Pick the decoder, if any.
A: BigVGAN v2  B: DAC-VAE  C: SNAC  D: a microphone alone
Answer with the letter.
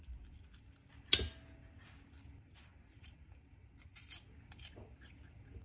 D